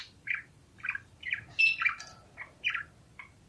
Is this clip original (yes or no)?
no